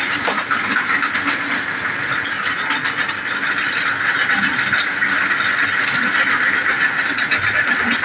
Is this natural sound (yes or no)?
yes